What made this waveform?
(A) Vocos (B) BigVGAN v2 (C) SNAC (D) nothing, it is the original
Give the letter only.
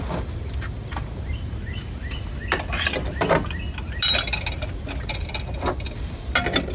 D